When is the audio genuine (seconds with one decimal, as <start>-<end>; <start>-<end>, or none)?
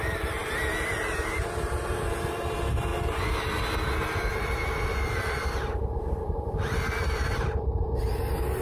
0.0-8.6